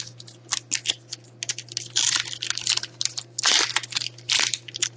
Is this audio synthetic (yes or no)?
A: no